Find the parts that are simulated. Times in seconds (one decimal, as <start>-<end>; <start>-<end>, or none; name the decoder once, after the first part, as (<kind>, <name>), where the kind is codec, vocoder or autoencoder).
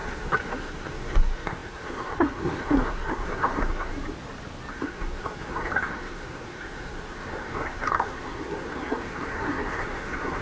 0.0-3.9 (codec, SNAC); 4.7-10.4